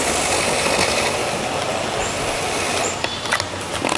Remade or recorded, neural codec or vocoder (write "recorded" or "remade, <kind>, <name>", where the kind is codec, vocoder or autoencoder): recorded